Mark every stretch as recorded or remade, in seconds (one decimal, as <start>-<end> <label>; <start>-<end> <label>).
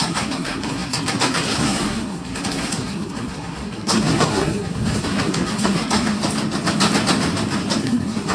0.0-6.2 remade; 6.2-7.8 recorded; 7.8-8.3 remade